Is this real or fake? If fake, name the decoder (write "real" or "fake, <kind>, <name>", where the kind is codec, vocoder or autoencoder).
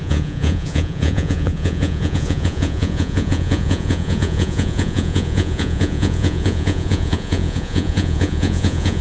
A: fake, vocoder, Vocos